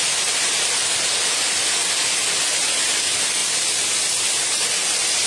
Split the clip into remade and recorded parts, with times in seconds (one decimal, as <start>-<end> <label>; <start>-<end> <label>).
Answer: 0.0-5.3 recorded